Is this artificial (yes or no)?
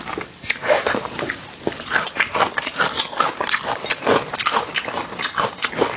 no